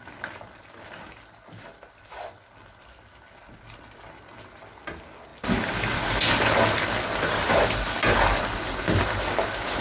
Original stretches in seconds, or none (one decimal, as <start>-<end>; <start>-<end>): 0.0-9.8